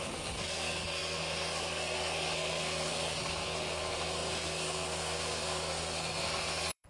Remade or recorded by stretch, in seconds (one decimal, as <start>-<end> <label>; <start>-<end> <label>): 0.0-6.9 remade